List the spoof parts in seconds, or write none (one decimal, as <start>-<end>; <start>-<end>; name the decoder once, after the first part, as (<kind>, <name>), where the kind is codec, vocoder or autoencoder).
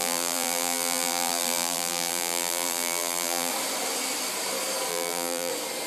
0.0-3.5 (vocoder, BigVGAN v2); 4.9-5.5